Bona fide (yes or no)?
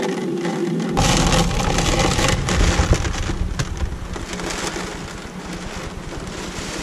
yes